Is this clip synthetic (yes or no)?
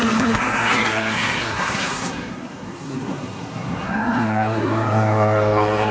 yes